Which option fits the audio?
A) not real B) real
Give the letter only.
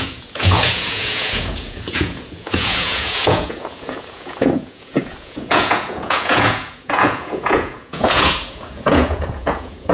A